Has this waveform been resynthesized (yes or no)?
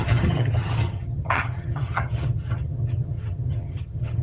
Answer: yes